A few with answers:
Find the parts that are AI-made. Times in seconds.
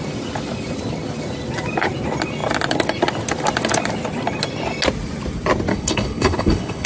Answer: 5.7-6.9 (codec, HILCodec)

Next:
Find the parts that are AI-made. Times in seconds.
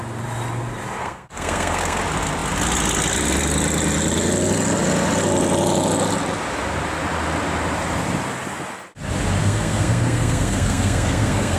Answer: 1.0-2.0 (codec, SNAC); 9.4-11.6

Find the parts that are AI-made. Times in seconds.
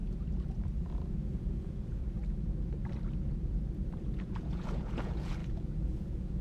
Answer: 1.1-2.0 (vocoder, Vocos); 4.0-6.4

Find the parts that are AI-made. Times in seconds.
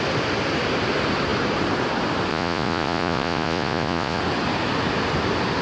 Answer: 2.3-4.2 (vocoder, Vocos)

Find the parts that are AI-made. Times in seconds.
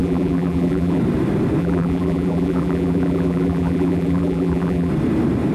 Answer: 0.0-1.0 (vocoder, BigVGAN v2); 1.6-4.9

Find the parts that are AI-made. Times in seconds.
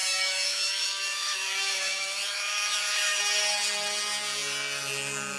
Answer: 0.0-3.2 (autoencoder, DAC-VAE)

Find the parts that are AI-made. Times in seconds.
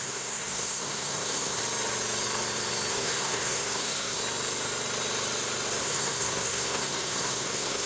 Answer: 0.0-1.6 (codec, SNAC); 2.9-4.2; 5.8-7.9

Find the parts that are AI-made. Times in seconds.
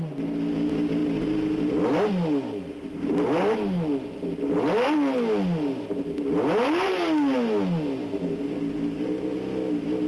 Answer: none